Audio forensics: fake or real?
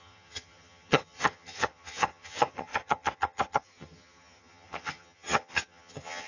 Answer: fake